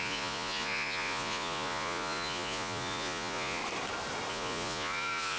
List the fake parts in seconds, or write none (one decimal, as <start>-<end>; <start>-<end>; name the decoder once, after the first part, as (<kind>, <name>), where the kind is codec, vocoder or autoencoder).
0.0-3.6 (vocoder, Vocos); 4.3-5.4